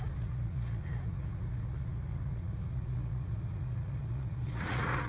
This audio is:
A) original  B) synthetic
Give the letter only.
B